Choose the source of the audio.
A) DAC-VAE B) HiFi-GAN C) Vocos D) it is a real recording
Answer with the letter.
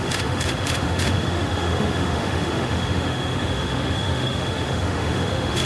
A